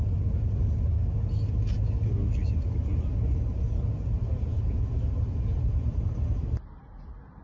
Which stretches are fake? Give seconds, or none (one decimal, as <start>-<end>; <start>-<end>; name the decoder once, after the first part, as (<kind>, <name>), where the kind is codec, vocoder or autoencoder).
none